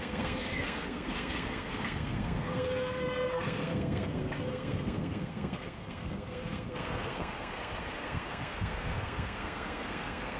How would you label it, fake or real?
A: fake